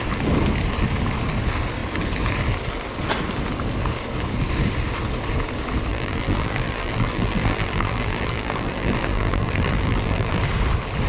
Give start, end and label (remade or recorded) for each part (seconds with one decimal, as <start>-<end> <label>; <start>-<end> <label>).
0.0-5.9 recorded; 5.9-10.4 remade; 10.4-11.1 recorded